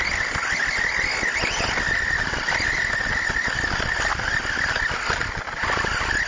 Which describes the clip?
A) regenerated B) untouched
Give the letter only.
B